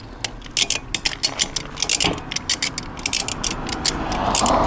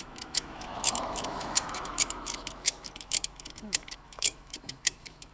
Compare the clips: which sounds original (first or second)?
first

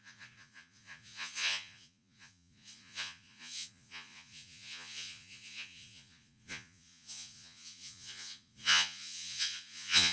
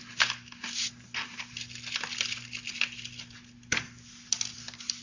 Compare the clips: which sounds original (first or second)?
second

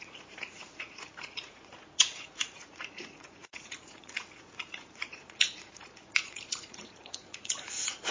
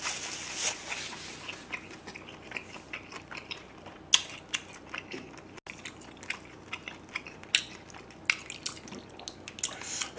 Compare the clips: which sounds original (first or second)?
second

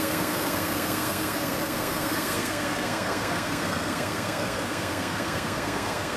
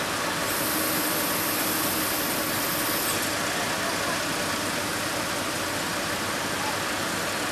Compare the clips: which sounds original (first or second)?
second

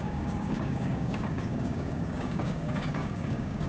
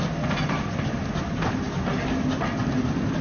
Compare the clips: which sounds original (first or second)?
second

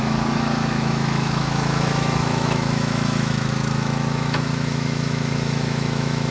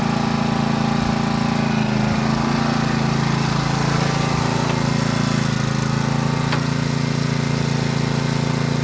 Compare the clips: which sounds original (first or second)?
second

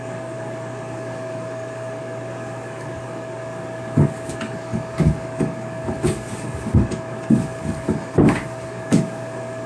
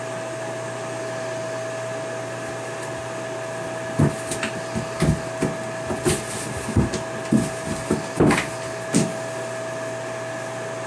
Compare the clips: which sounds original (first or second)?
second